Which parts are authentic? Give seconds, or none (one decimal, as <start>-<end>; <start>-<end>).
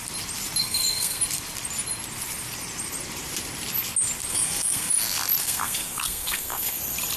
0.0-0.6; 1.2-4.3; 4.9-5.4; 6.8-7.2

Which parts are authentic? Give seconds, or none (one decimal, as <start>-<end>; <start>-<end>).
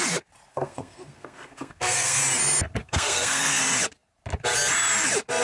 0.0-0.5; 2.2-2.8; 3.6-5.4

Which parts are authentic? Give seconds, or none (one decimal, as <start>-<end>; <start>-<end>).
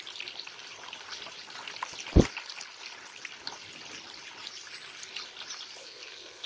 0.0-5.8